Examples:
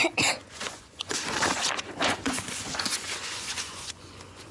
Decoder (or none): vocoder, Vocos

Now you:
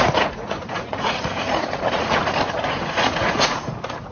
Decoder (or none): vocoder, Vocos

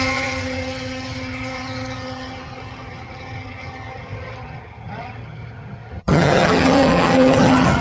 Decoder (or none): vocoder, HiFi-GAN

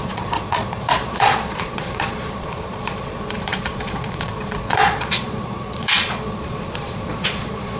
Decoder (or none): vocoder, Vocos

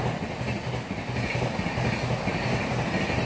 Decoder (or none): none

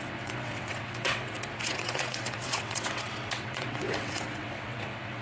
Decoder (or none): vocoder, WaveNeXt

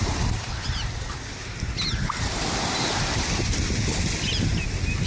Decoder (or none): none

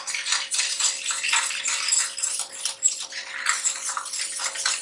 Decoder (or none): none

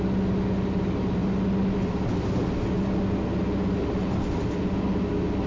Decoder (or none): none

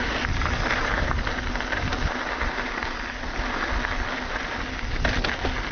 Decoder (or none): none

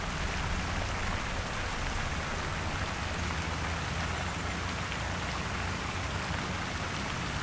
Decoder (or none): none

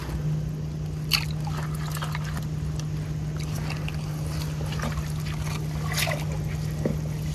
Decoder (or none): none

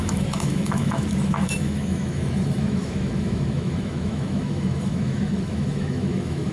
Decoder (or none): autoencoder, DAC-VAE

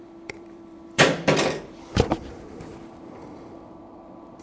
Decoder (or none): vocoder, BigVGAN v2